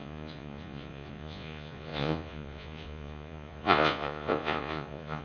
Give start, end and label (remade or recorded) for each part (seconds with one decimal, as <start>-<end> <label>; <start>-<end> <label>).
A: 0.0-5.2 remade